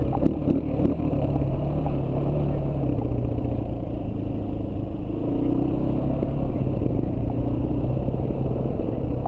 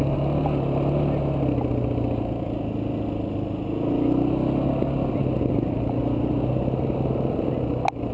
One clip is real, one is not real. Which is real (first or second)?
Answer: second